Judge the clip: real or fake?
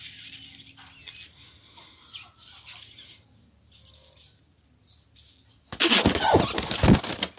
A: real